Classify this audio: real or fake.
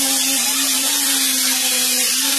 real